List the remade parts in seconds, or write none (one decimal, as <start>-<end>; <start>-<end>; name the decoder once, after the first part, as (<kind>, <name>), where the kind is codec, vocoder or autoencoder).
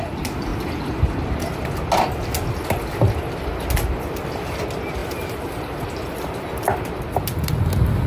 5.0-5.8 (vocoder, BigVGAN v2)